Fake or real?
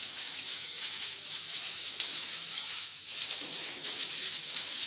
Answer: fake